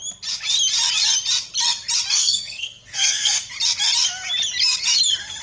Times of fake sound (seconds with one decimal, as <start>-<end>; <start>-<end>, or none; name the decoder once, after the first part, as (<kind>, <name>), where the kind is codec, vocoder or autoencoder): 2.2-3.5 (codec, SNAC)